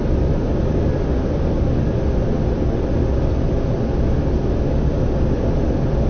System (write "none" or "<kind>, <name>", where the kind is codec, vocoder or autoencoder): none